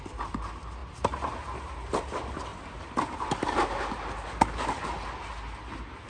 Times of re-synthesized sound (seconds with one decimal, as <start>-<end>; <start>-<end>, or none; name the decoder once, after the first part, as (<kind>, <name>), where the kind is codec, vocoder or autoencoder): none